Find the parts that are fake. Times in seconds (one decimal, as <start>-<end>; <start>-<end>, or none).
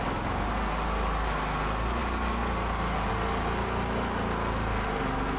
none